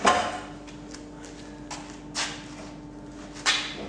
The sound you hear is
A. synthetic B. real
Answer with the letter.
B